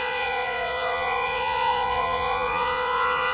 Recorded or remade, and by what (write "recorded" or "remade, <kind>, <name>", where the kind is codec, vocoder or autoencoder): remade, vocoder, Vocos